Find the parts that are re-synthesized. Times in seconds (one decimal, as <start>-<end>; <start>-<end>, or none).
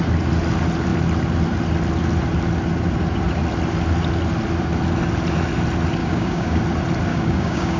6.0-6.6; 7.1-7.8